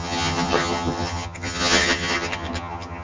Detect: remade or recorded remade